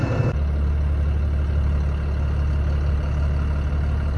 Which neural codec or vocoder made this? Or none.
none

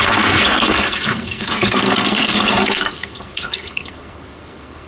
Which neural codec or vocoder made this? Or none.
codec, SNAC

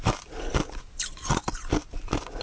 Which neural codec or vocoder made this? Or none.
none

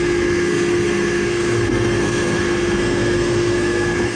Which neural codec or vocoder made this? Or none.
codec, SNAC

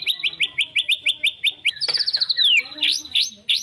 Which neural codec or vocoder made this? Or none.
none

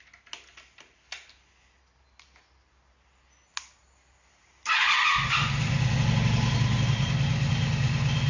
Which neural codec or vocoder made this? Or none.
none